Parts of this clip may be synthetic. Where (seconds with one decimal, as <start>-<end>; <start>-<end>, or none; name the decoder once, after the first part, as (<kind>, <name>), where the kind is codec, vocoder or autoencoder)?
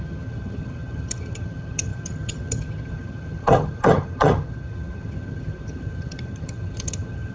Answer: 0.0-7.3 (vocoder, HiFi-GAN)